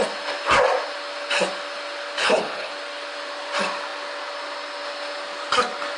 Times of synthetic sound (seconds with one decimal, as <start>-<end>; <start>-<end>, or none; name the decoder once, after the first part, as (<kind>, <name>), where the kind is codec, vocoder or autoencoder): 2.2-2.7 (codec, HILCodec)